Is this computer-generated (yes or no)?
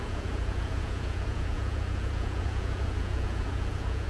yes